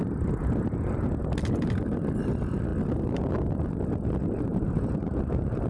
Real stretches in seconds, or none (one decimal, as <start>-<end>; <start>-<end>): 0.0-4.5